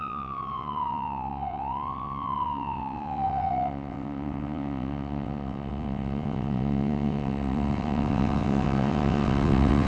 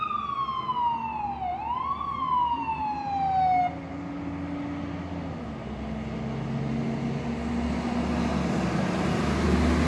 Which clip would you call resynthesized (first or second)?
first